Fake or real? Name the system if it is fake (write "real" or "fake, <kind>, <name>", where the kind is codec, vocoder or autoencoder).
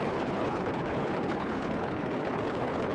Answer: fake, codec, HILCodec